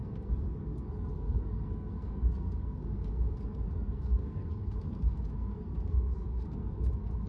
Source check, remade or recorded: remade